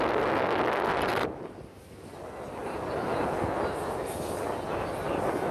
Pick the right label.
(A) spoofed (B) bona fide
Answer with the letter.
B